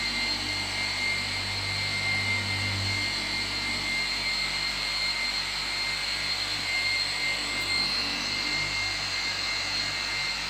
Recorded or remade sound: recorded